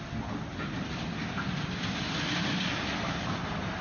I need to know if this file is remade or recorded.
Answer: recorded